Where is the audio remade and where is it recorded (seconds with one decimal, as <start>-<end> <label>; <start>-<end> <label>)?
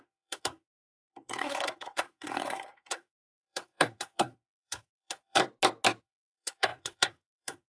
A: 0.0-5.4 remade; 5.4-6.0 recorded; 6.0-7.7 remade